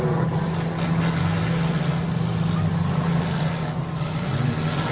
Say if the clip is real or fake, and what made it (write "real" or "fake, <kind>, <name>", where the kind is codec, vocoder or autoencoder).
real